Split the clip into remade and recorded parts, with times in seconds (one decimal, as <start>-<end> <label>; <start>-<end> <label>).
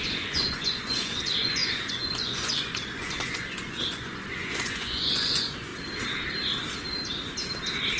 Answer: 0.0-5.7 remade; 5.7-8.0 recorded